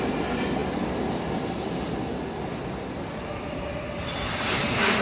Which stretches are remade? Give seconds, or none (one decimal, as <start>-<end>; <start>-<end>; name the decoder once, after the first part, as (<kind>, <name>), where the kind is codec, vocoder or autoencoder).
none